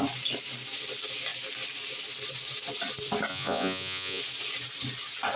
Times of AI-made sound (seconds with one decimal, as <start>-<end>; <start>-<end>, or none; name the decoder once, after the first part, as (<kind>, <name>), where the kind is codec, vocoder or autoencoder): 3.3-4.2 (vocoder, Vocos)

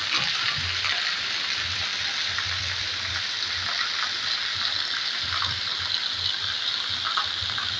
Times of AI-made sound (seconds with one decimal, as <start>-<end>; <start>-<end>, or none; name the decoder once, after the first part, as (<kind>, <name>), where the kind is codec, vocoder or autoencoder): none

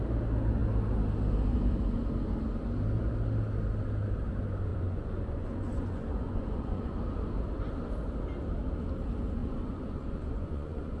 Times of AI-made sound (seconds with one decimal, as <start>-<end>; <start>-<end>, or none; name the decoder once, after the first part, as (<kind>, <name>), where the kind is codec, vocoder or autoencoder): 4.7-7.0 (vocoder, Vocos); 9.4-11.0

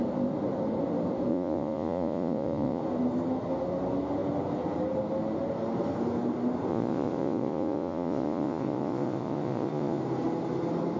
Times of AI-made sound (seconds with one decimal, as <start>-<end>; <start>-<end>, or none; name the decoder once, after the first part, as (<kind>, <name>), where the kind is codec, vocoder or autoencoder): 1.3-2.8 (vocoder, Vocos); 6.7-10.0

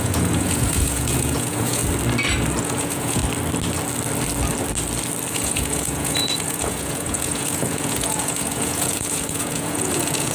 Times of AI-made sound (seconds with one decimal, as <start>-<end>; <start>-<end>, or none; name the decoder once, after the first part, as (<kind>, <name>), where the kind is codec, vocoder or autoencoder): 0.0-1.8 (vocoder, Vocos); 2.6-3.2; 5.3-10.3

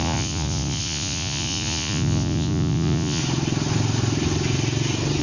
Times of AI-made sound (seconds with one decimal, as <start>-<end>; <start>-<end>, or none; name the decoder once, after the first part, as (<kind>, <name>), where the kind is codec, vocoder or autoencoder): 0.0-3.2 (vocoder, Vocos)

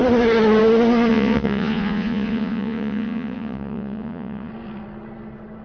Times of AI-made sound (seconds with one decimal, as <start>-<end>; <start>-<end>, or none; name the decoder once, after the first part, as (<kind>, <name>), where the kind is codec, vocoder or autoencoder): 1.1-4.5 (vocoder, Vocos)